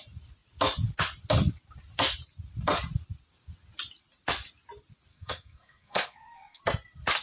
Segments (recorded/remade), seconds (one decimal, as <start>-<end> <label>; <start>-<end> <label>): 0.0-5.1 recorded; 5.1-6.6 remade; 6.6-7.2 recorded